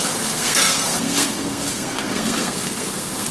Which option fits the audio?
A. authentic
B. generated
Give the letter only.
B